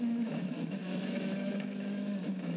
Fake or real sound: fake